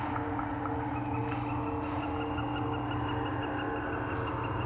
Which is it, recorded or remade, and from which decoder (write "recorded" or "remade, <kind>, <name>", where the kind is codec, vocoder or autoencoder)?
recorded